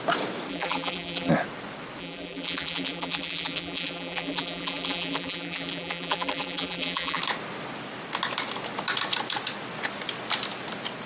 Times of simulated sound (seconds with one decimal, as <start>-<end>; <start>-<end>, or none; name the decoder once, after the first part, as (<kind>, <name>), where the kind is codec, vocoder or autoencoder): 0.5-1.3 (vocoder, BigVGAN v2); 2.0-7.2